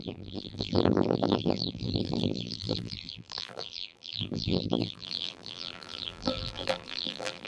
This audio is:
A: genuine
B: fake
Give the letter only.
B